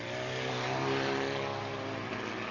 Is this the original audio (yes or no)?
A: yes